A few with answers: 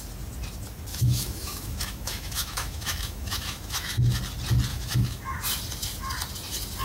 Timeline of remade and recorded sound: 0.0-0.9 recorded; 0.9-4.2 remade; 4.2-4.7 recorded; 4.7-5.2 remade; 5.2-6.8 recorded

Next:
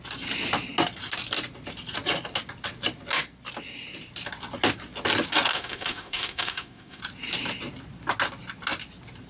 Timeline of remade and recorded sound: 0.0-5.5 recorded; 5.5-7.0 remade; 7.0-9.3 recorded

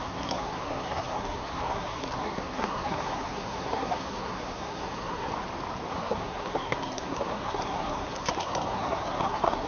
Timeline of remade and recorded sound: 0.0-5.3 remade; 5.3-5.9 recorded; 5.9-9.7 remade